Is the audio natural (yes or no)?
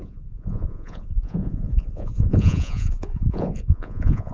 no